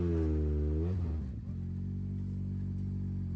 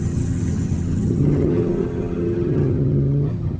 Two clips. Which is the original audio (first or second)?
first